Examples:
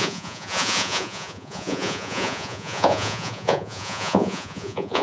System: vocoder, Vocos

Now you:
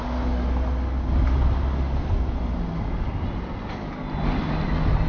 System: none